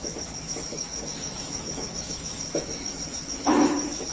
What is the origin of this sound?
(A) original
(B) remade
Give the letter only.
B